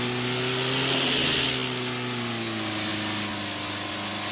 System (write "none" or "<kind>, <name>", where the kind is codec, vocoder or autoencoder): none